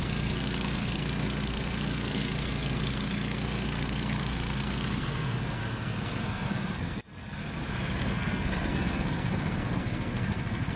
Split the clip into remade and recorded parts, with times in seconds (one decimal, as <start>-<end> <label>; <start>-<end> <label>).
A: 0.0-7.4 remade; 7.4-8.1 recorded; 8.1-10.8 remade